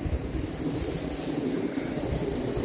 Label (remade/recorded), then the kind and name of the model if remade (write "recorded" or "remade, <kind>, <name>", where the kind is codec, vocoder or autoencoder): recorded